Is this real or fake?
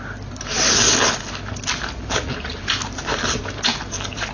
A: real